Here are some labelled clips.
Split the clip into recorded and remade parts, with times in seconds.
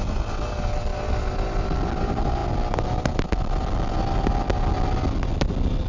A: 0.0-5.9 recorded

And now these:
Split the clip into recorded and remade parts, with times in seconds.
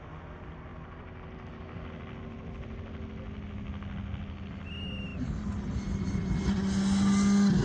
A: 0.0-7.6 recorded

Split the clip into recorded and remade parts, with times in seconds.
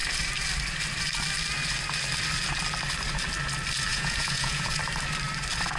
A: 0.0-3.9 recorded; 3.9-4.8 remade; 4.8-5.8 recorded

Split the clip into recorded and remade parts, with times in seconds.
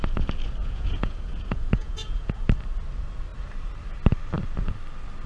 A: 0.0-0.6 recorded; 0.6-2.4 remade; 2.4-5.3 recorded